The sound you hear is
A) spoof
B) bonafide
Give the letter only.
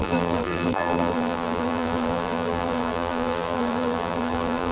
A